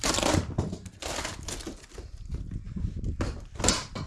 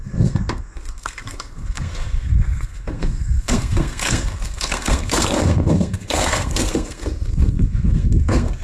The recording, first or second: first